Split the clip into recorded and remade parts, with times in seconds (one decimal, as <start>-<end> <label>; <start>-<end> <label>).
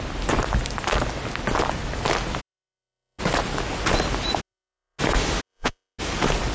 0.0-2.4 recorded; 2.4-3.2 remade; 3.2-4.4 recorded; 4.4-5.0 remade; 5.0-5.4 recorded; 5.4-6.0 remade; 6.0-6.5 recorded